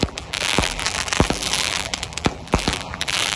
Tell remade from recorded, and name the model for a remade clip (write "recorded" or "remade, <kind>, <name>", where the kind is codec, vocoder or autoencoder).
remade, vocoder, BigVGAN v2